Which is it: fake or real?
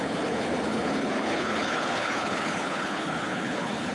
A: fake